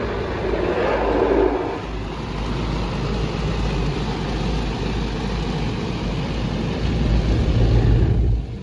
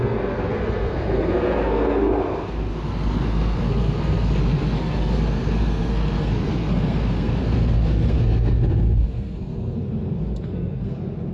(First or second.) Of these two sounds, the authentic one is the first